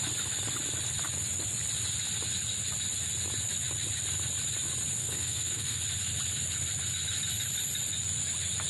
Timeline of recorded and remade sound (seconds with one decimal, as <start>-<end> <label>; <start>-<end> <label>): 0.0-5.0 recorded; 5.0-5.8 remade; 5.8-8.7 recorded